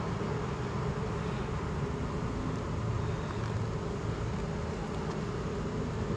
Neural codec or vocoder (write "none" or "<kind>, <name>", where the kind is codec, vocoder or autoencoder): none